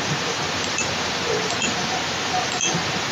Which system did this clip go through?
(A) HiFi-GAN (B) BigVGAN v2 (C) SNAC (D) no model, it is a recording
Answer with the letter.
D